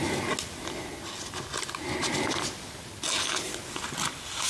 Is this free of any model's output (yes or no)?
yes